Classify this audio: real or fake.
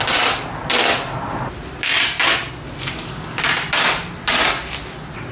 real